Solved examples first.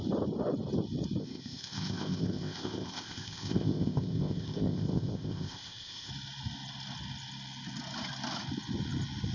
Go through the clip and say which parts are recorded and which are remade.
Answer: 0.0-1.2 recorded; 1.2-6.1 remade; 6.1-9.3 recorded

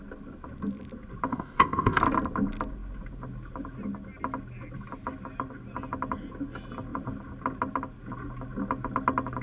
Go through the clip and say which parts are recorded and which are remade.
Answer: 0.0-1.3 recorded; 1.3-2.0 remade; 2.0-9.4 recorded

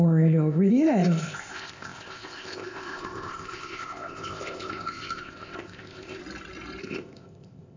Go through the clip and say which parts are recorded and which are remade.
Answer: 0.0-6.2 remade; 6.2-6.8 recorded; 6.8-7.8 remade

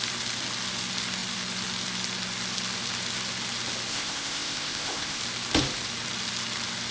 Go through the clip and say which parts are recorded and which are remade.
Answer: 0.0-3.9 recorded; 3.9-5.2 remade; 5.2-6.9 recorded

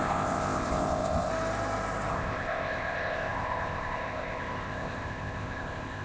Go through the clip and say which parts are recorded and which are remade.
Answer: 0.0-1.3 remade; 1.3-2.1 recorded; 2.1-6.0 remade

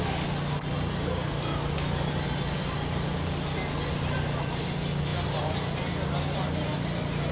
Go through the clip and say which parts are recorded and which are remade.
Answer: 0.0-7.3 recorded

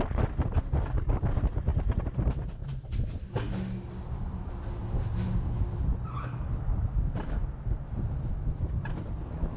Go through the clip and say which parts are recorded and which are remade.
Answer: 0.0-9.6 recorded